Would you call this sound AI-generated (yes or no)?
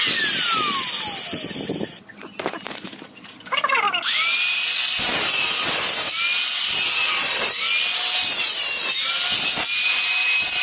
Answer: no